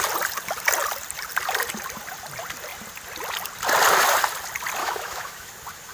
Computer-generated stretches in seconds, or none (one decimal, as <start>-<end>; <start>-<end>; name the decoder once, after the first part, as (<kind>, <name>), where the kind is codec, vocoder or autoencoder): 4.8-5.5 (autoencoder, DAC-VAE)